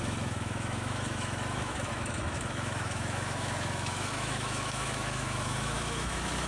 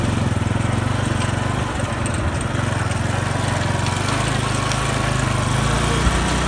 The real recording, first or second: second